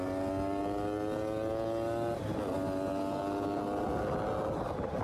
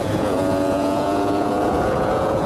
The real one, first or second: first